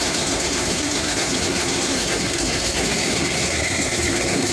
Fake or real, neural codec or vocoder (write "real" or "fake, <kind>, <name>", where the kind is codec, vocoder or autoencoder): fake, codec, SNAC